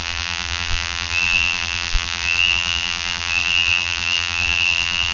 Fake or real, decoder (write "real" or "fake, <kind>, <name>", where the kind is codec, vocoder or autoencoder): fake, vocoder, BigVGAN v2